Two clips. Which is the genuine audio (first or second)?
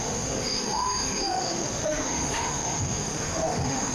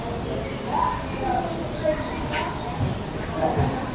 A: second